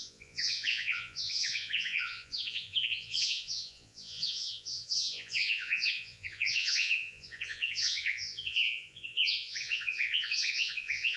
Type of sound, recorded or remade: remade